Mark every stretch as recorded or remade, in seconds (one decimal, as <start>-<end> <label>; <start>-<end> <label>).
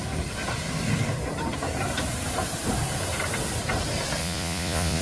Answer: 0.0-4.2 recorded; 4.2-5.0 remade